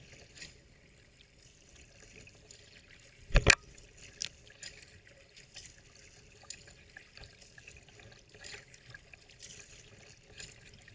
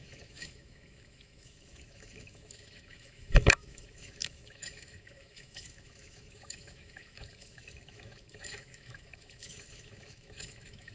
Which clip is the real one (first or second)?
first